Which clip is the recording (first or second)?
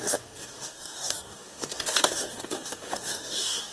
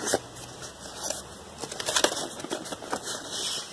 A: second